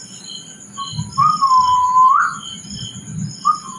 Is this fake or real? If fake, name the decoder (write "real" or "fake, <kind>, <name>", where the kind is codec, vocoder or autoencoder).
real